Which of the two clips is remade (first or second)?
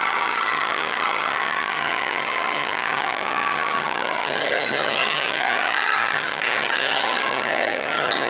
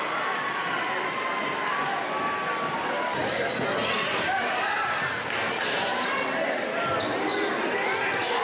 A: first